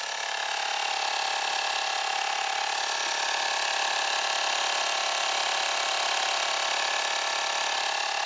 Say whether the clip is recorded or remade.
recorded